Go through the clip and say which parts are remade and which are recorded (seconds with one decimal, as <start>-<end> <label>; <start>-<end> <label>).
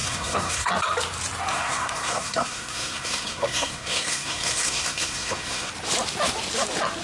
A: 0.0-0.7 remade; 0.7-1.5 recorded; 1.5-5.7 remade; 5.7-7.0 recorded